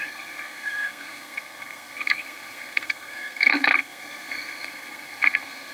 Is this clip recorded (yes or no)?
no